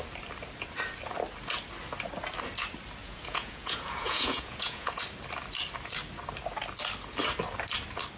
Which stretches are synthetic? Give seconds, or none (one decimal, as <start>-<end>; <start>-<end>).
3.0-5.0